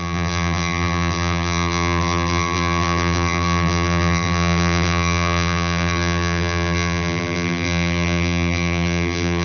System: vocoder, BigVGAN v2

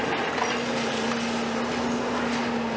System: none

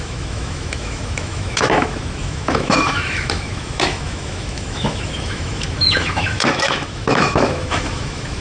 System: autoencoder, DAC-VAE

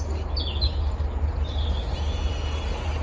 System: none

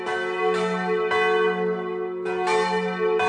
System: none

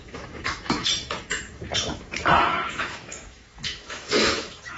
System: autoencoder, DAC-VAE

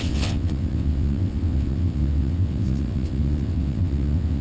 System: vocoder, WaveNeXt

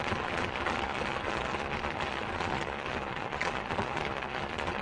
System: vocoder, Vocos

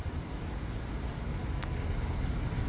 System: none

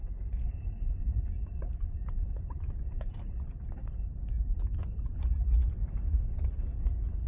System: vocoder, BigVGAN v2